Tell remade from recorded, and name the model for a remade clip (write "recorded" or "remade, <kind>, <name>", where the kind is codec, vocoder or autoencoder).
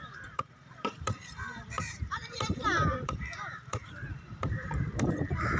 remade, vocoder, BigVGAN v2